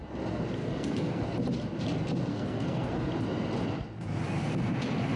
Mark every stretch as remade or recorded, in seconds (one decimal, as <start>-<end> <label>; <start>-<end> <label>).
0.0-0.6 recorded; 0.6-1.2 remade; 1.2-2.3 recorded; 2.3-3.1 remade; 3.1-5.2 recorded